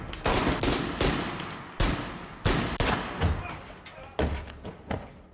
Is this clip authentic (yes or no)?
yes